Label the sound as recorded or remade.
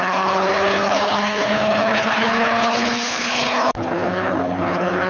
remade